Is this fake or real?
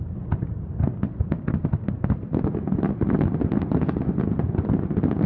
real